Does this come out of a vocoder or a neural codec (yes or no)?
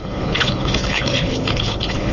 yes